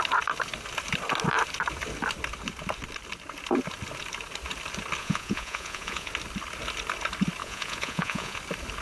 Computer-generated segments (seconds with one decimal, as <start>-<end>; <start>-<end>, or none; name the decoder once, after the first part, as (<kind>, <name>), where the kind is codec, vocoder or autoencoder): 5.0-6.1 (vocoder, Vocos); 7.4-8.4